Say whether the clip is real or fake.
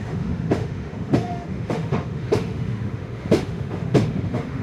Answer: fake